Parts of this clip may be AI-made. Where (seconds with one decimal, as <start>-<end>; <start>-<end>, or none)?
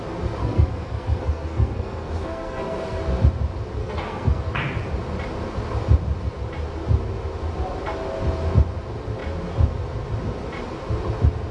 0.4-3.0; 3.8-4.5